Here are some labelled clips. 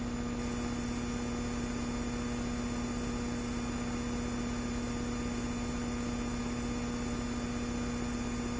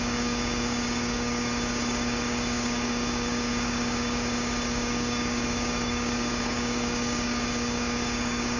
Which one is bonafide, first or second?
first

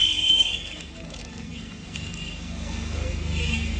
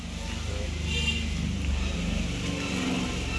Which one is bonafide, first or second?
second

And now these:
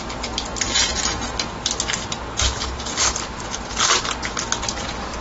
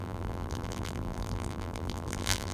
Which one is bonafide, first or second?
first